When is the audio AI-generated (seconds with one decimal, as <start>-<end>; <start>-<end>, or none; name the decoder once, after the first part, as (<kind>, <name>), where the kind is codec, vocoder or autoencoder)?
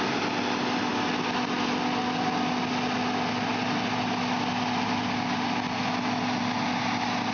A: none